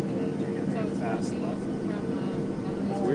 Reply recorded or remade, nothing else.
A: recorded